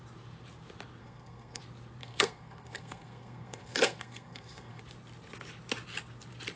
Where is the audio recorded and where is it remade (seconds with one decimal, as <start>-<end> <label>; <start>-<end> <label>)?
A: 0.0-1.0 recorded; 1.0-1.6 remade; 1.6-2.0 recorded; 2.0-4.8 remade; 4.8-6.6 recorded